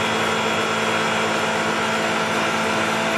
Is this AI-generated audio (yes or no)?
no